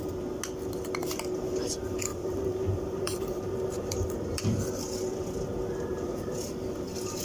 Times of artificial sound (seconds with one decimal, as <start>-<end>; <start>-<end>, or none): 2.1-4.4; 5.9-6.5